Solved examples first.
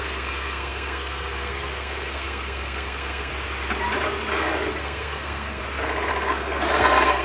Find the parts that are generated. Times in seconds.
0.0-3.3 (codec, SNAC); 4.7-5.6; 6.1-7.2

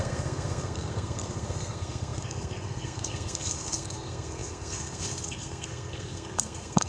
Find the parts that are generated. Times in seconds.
0.0-6.9 (codec, SNAC)

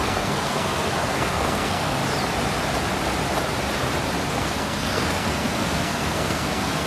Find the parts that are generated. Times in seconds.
0.0-2.0 (codec, SNAC); 4.3-6.9

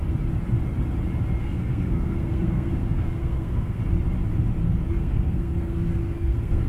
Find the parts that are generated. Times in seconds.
1.4-3.8 (codec, SNAC); 4.9-6.7

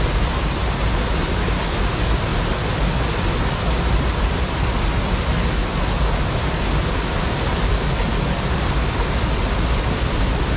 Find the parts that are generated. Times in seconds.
none

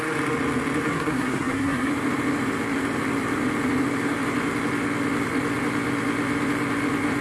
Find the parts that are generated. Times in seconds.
0.9-1.9 (codec, SNAC)

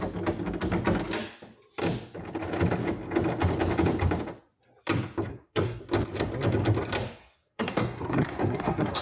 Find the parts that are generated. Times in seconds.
5.3-5.8 (codec, SNAC); 7.2-9.0

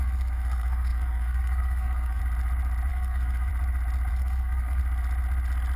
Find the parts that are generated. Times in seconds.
0.0-2.2 (codec, SNAC); 2.9-3.5; 4.1-4.8